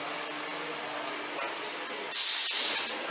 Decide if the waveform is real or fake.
real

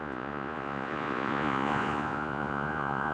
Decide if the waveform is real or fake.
fake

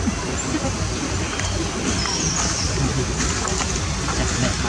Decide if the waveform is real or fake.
real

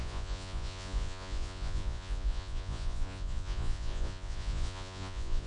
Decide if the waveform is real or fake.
fake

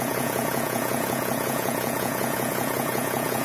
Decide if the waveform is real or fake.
fake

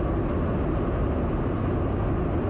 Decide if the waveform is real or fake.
real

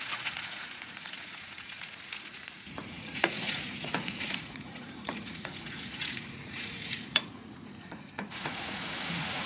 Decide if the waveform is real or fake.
fake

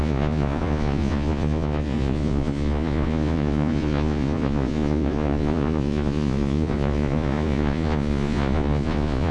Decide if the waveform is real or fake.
fake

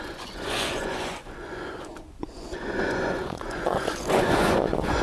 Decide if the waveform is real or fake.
fake